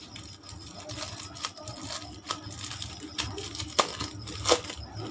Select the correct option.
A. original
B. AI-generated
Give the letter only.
A